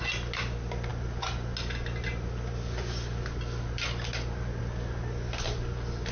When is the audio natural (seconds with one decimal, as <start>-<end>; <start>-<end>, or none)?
0.0-6.1